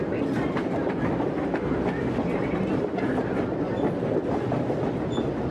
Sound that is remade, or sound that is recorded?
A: recorded